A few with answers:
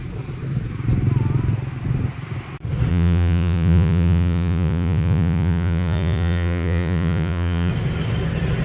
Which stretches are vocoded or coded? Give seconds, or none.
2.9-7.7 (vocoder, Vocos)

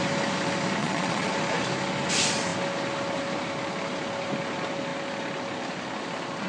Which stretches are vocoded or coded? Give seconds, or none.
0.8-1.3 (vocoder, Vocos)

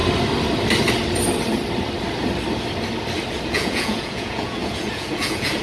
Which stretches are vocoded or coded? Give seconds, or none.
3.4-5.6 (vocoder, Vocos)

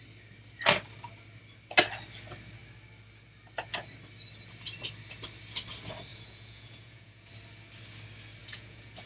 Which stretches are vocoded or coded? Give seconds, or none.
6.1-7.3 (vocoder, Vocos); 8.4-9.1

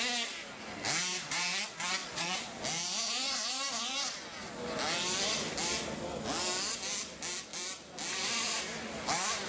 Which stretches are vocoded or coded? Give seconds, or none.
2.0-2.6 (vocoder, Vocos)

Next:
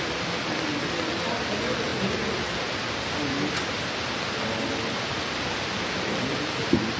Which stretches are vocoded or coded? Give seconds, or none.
none

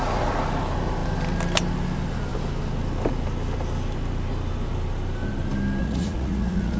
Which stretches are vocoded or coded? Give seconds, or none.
5.8-6.8 (vocoder, Vocos)